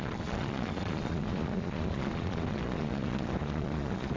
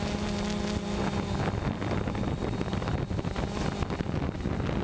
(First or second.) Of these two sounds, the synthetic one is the first